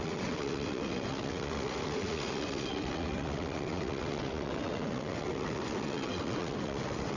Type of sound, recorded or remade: remade